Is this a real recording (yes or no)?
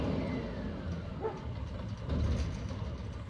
yes